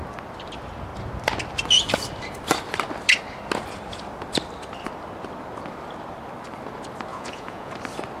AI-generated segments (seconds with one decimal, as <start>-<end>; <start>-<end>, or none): 7.1-7.7